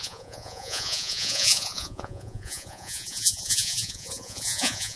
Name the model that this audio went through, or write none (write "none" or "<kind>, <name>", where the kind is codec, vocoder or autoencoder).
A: vocoder, Vocos